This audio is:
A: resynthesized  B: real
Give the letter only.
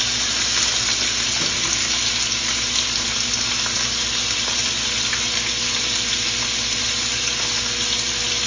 B